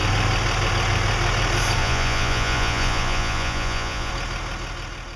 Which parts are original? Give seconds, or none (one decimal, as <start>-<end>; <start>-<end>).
0.0-1.8; 4.1-5.2